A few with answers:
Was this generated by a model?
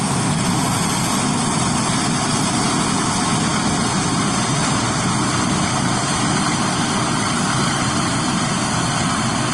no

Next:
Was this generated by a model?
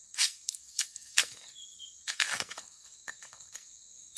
yes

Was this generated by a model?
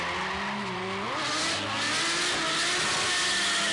no